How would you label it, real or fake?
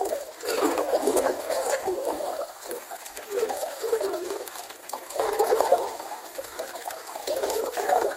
fake